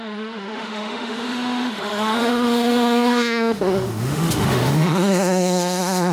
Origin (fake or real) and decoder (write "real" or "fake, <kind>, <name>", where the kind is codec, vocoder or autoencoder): fake, autoencoder, DAC-VAE